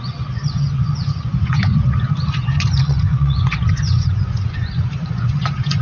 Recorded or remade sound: remade